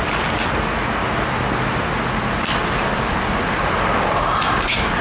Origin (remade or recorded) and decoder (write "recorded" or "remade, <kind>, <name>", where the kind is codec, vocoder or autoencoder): recorded